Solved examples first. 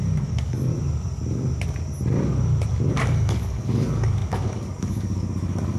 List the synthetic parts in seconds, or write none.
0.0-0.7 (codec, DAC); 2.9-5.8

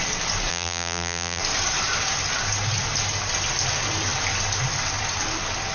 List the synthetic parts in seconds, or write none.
0.5-1.4 (vocoder, BigVGAN v2)

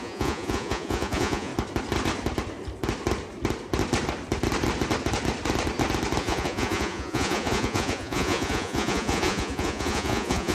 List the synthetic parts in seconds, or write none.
0.0-1.5 (vocoder, Vocos); 6.2-10.5

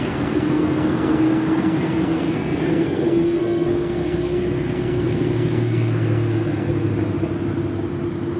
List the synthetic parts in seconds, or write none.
0.0-6.9 (codec, SNAC)

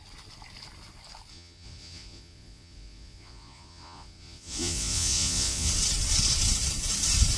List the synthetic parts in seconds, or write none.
1.3-5.7 (vocoder, Vocos)

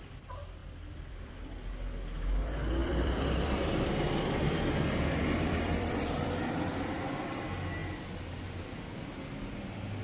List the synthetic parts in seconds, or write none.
0.6-1.3 (vocoder, BigVGAN v2); 2.8-7.0

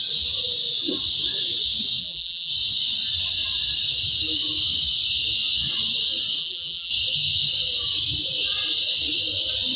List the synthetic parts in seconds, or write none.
2.0-2.5 (vocoder, BigVGAN v2); 6.4-6.9

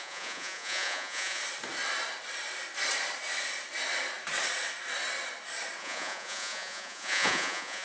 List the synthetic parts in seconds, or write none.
0.0-1.4 (vocoder, Vocos); 5.8-7.8